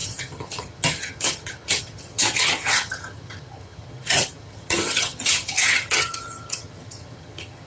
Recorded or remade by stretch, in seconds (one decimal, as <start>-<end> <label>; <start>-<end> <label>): 0.0-7.7 remade